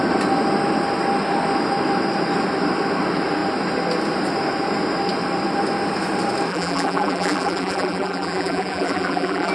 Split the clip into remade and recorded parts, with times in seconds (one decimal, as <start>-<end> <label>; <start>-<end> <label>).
0.0-6.5 recorded; 6.5-9.5 remade